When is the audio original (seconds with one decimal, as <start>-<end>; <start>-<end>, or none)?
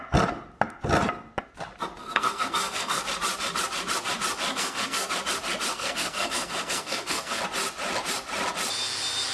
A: 0.0-2.0; 3.0-4.5; 5.1-5.7; 7.4-9.3